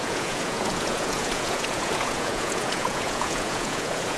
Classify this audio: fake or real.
fake